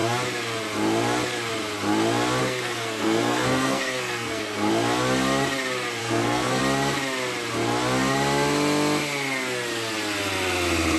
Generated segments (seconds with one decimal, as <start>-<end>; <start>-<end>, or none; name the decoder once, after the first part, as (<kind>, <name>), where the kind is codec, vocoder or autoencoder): 2.4-4.7 (codec, SNAC); 6.0-6.6